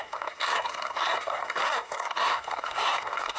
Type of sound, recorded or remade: remade